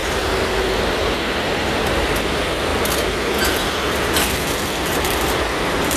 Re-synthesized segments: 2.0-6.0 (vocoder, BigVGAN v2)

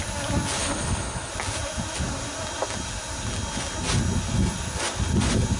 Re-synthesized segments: 0.6-1.3 (codec, HILCodec)

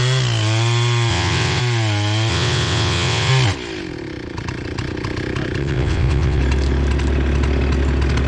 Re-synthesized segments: 1.1-1.6 (vocoder, WaveNeXt); 2.3-3.3; 5.6-6.4

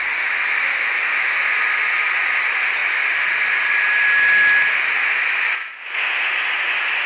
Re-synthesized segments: none

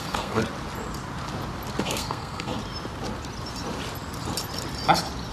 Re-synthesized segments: 0.0-0.4 (codec, SNAC); 1.8-2.6

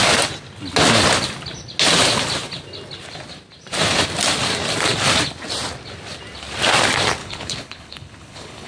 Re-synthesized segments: 7.2-8.7 (codec, HILCodec)

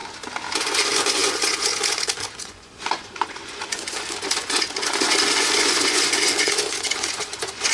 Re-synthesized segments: 0.6-7.7 (vocoder, Vocos)